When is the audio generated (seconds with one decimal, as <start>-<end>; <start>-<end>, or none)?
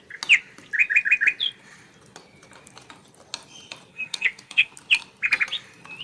3.9-4.7